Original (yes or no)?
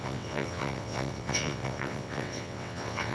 no